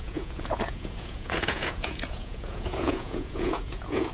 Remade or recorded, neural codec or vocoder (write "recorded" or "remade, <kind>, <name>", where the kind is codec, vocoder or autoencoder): remade, vocoder, Vocos